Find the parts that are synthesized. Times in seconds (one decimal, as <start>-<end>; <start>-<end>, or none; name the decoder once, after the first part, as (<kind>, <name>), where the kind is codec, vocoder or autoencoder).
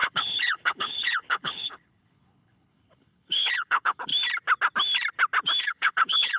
0.0-4.1 (codec, HILCodec); 5.6-6.4